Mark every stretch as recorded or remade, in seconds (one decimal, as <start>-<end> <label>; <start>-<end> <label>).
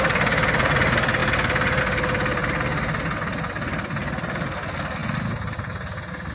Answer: 0.0-6.3 recorded